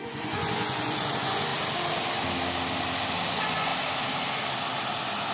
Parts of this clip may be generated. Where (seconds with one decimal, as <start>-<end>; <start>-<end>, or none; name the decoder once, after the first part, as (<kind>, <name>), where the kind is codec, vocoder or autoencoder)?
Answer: 0.0-1.5 (vocoder, Vocos); 3.3-3.7